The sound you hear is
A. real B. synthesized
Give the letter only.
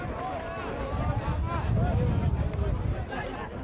A